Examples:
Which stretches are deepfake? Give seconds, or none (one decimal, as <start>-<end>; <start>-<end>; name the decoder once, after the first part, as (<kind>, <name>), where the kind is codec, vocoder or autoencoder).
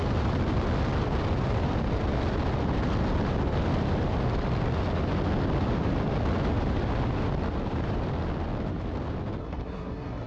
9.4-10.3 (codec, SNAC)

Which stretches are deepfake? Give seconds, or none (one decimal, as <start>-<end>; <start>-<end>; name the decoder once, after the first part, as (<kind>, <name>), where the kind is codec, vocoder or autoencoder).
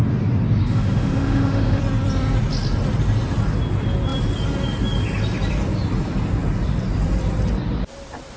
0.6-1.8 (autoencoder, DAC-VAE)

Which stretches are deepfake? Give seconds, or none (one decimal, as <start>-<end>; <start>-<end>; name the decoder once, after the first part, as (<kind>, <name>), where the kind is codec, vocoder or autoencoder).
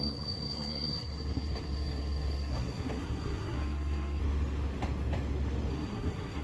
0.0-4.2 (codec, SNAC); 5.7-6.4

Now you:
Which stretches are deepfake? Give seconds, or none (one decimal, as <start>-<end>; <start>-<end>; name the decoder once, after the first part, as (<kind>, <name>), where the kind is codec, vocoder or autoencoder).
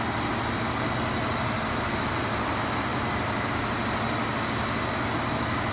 none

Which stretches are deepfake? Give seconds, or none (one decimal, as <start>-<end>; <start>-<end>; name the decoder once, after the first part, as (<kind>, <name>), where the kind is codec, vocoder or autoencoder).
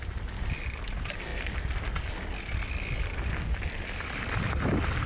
none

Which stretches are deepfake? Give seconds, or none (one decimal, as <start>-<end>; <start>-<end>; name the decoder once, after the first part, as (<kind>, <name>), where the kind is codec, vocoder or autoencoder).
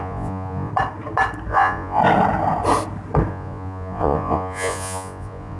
0.0-0.7 (vocoder, Vocos); 1.5-2.0; 3.3-5.6